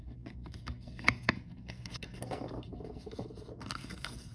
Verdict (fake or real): fake